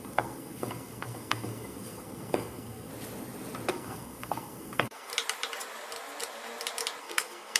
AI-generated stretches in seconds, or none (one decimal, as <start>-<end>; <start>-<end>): 0.0-2.9; 3.7-5.1; 7.0-7.6